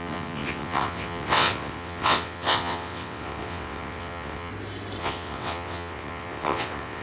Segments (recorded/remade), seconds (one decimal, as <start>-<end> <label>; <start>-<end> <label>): 0.0-4.5 remade; 4.5-5.0 recorded; 5.0-7.0 remade